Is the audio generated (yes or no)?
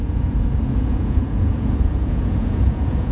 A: yes